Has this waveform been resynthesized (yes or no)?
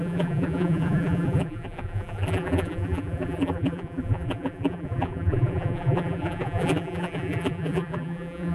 yes